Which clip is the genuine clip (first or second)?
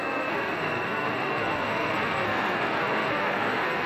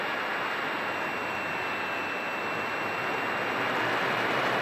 second